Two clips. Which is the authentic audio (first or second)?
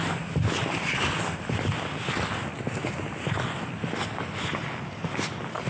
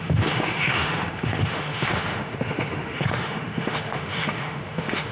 first